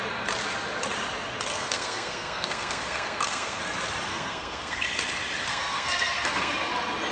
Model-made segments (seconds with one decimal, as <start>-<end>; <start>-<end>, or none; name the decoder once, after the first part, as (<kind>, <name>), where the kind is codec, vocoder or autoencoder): 1.5-3.6 (codec, SNAC); 4.1-4.8; 5.5-6.5